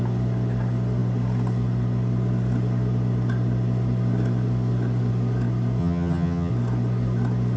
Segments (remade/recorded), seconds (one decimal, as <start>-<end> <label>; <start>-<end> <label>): 0.0-5.8 recorded; 5.8-6.5 remade; 6.5-7.6 recorded